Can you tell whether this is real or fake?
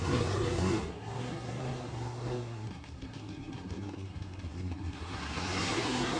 fake